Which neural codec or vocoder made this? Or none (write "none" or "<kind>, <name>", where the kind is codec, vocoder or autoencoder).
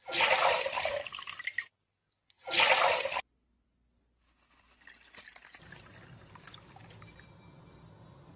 none